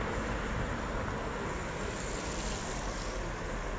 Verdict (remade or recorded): recorded